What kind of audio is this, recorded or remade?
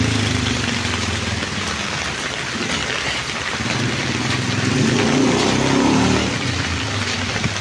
recorded